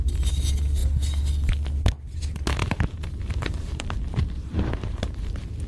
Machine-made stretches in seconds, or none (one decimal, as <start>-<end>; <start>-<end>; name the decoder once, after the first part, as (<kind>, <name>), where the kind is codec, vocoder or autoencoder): 2.6-5.3 (vocoder, BigVGAN v2)